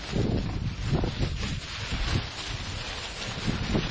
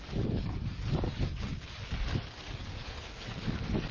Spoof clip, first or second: second